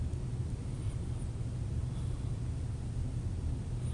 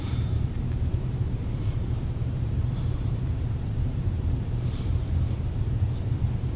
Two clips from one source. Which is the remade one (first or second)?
second